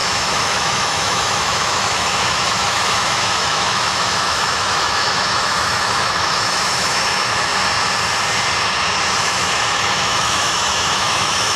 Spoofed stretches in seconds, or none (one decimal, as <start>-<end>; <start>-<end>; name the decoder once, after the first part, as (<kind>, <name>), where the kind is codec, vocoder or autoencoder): 0.0-7.5 (autoencoder, DAC-VAE); 9.2-11.6